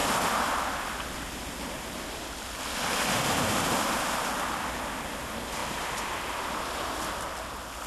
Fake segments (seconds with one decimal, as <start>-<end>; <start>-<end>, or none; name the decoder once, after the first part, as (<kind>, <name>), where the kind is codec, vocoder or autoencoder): 0.0-2.3 (vocoder, BigVGAN v2)

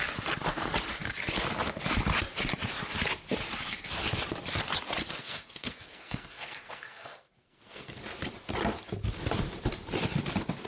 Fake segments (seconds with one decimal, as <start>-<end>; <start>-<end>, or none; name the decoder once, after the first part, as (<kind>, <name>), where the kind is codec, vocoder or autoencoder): 5.2-8.0 (codec, SNAC)

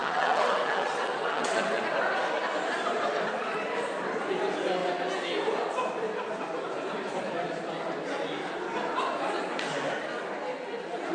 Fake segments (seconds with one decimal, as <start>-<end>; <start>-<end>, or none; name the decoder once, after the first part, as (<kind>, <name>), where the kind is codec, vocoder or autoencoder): 0.0-1.8 (vocoder, WaveNeXt)

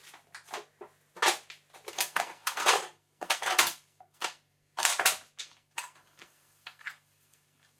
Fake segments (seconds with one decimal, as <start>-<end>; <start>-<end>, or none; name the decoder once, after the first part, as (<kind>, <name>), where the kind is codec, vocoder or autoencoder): 1.9-4.9 (codec, SNAC); 5.4-7.8

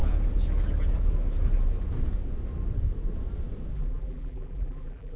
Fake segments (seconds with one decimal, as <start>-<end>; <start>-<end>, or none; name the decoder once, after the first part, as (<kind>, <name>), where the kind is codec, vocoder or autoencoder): 3.7-5.2 (vocoder, BigVGAN v2)

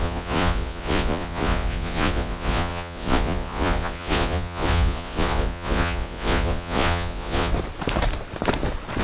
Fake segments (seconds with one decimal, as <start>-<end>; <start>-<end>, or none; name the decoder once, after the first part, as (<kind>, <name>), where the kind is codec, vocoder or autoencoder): 0.0-7.5 (vocoder, Vocos)